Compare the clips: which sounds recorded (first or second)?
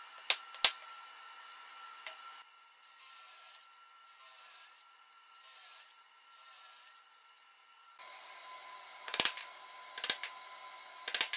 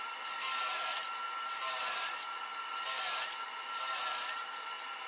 first